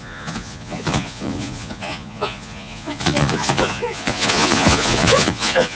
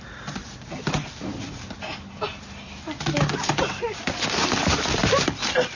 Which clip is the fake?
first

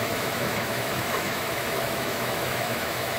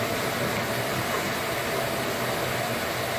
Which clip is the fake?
first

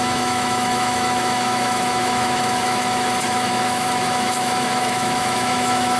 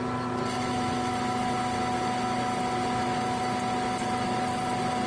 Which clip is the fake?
first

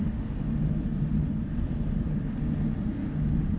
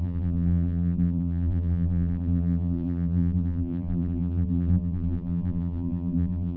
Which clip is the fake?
second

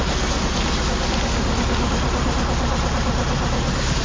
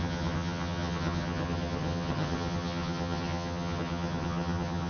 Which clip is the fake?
second